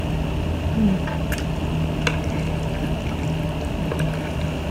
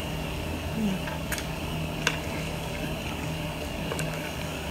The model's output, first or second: second